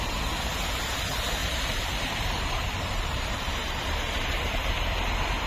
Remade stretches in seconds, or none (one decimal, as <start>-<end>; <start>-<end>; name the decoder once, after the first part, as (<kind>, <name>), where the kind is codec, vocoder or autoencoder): 1.4-4.7 (vocoder, BigVGAN v2)